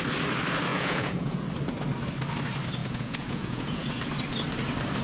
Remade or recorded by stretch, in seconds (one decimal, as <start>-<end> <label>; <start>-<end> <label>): 0.0-0.7 recorded; 0.7-1.5 remade; 1.5-2.8 recorded; 2.8-4.1 remade; 4.1-5.0 recorded